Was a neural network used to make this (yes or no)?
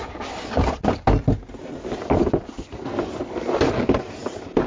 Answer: no